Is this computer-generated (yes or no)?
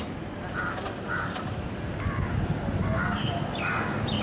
no